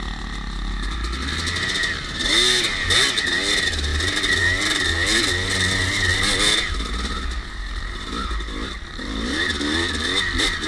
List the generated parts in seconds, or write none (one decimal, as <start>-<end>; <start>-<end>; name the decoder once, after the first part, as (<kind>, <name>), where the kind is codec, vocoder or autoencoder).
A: none